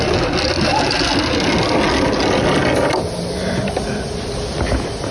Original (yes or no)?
yes